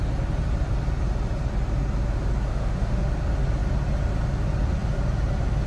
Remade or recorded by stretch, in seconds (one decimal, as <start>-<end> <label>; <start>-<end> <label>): 0.0-2.5 recorded; 2.5-3.1 remade; 3.1-5.7 recorded